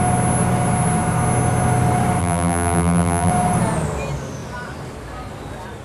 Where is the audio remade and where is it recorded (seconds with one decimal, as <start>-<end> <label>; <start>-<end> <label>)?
0.0-2.2 recorded; 2.2-3.3 remade; 3.3-5.8 recorded